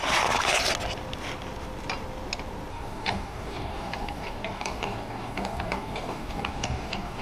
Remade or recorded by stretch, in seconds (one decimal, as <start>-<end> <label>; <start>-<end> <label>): 0.0-2.7 recorded; 2.7-7.2 remade